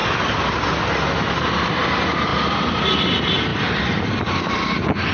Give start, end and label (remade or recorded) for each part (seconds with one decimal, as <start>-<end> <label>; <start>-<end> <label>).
0.0-5.1 recorded